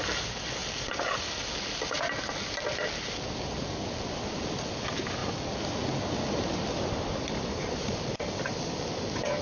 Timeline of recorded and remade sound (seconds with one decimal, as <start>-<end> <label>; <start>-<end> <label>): 0.0-9.4 recorded